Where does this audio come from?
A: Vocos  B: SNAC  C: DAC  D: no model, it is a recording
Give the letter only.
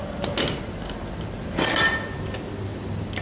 D